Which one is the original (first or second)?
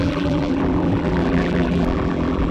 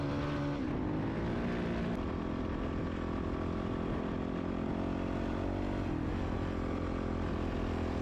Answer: second